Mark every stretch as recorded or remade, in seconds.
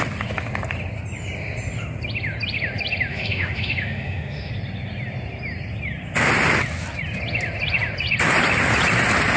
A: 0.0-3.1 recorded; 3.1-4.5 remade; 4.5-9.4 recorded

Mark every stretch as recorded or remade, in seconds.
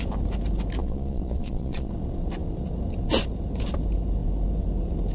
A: 0.0-0.8 recorded; 0.8-1.9 remade; 1.9-5.1 recorded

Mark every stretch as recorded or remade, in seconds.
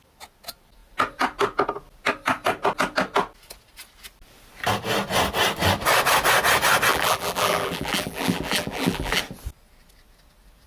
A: 0.0-6.9 recorded; 6.9-9.2 remade; 9.2-10.7 recorded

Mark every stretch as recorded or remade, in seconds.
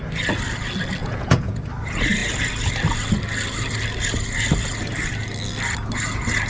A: 0.0-1.0 recorded; 1.0-1.6 remade; 1.6-6.5 recorded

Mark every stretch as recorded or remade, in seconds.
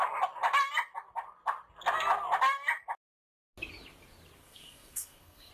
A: 0.0-4.4 recorded; 4.4-5.5 remade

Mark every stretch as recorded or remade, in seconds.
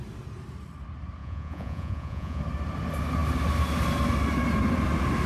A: 0.0-1.2 recorded; 1.2-2.4 remade; 2.4-5.3 recorded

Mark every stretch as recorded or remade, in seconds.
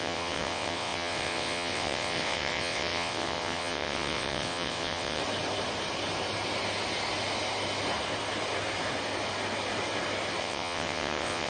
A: 0.0-5.2 remade; 5.2-10.4 recorded; 10.4-11.5 remade